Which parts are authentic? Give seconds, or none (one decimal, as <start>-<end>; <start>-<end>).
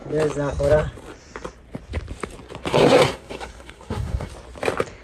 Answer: 0.0-2.7; 4.3-5.0